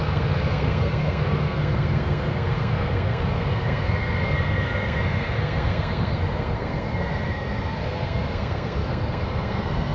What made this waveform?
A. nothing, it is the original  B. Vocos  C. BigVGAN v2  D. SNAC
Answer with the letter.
D